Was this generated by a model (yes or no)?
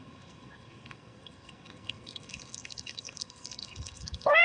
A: yes